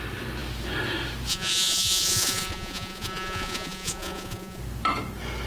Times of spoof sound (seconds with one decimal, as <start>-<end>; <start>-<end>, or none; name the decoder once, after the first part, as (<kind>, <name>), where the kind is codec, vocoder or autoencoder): 1.3-4.6 (vocoder, Vocos)